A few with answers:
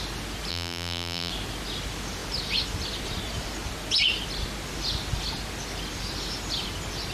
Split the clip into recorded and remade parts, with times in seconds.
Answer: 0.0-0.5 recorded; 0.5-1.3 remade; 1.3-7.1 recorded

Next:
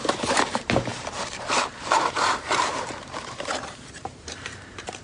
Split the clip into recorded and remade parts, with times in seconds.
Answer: 0.0-5.0 remade

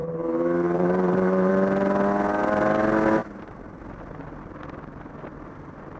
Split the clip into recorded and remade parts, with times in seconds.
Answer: 0.0-1.5 remade; 1.5-3.2 recorded; 3.2-3.8 remade; 3.8-6.0 recorded